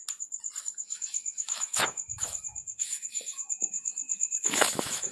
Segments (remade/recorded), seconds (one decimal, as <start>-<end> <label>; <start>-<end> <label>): 0.0-0.6 recorded; 0.6-5.1 remade